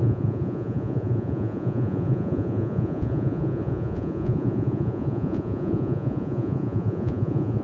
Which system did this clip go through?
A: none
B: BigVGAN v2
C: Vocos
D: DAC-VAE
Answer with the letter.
C